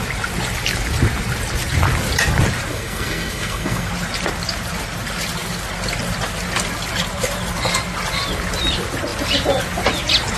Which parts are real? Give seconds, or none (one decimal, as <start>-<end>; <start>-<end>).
0.0-2.7; 3.9-10.4